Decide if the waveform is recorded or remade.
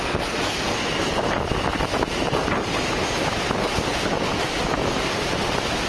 recorded